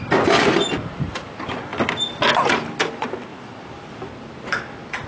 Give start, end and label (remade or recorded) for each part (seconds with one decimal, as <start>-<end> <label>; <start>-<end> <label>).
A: 0.0-5.1 recorded